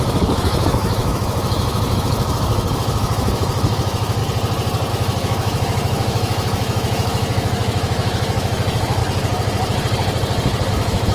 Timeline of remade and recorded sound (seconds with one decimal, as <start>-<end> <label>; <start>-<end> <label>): 0.0-4.2 remade; 4.2-4.9 recorded; 4.9-9.0 remade; 9.0-10.7 recorded; 10.7-11.1 remade